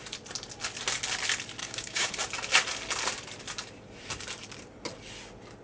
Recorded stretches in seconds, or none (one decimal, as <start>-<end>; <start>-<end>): 0.0-1.6; 2.1-5.6